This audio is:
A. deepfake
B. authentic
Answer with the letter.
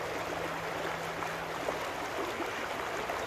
B